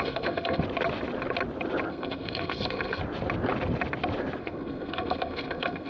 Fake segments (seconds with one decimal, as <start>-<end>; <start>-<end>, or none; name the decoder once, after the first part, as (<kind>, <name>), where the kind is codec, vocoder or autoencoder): 0.0-0.6 (codec, SNAC); 1.9-3.0; 4.4-5.9